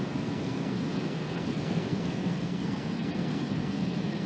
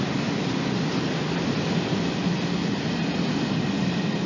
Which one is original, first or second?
second